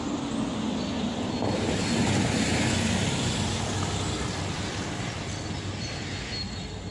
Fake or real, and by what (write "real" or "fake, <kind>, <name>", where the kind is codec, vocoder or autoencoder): real